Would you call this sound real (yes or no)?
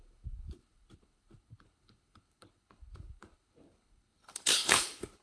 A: no